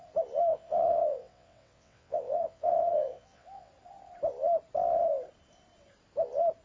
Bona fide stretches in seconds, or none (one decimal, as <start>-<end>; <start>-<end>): 0.0-0.5; 3.7-6.6

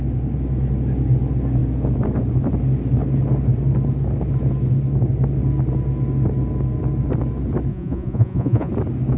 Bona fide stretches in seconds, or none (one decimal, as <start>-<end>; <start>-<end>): 0.0-7.7; 8.7-9.2

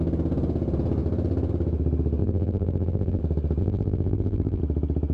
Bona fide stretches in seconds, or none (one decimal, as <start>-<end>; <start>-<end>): 0.0-2.2; 3.2-3.6; 4.6-5.1

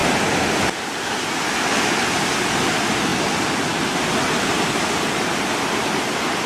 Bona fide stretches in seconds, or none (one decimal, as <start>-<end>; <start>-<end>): 0.0-6.5

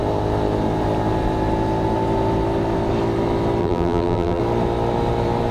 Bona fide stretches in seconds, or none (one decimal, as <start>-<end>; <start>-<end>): 0.0-3.6; 4.4-5.5

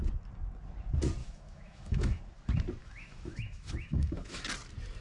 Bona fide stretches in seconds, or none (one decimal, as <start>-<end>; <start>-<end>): 0.0-1.2; 2.2-2.8; 4.4-5.0

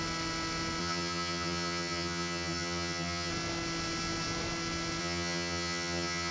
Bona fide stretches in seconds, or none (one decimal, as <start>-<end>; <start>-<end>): 0.0-0.8; 3.3-5.0

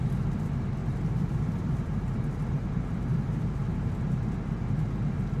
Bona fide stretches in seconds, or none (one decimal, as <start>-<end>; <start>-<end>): 0.0-0.8; 4.0-5.4